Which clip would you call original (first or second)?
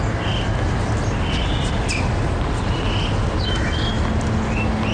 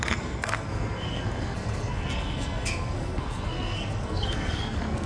first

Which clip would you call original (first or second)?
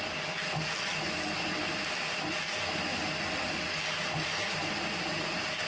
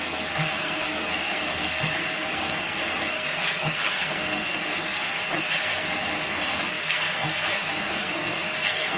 first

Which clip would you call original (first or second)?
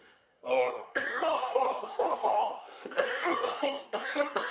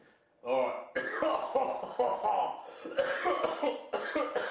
second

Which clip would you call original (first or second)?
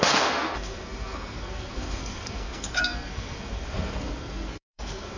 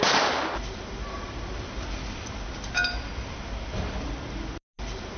second